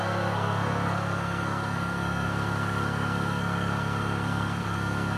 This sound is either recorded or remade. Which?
remade